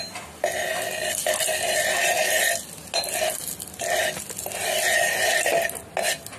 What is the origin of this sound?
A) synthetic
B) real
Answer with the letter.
B